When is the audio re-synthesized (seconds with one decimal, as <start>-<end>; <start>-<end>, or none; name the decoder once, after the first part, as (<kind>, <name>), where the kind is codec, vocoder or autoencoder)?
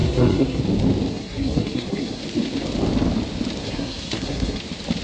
0.0-0.6 (codec, SNAC); 1.1-2.2; 3.6-4.6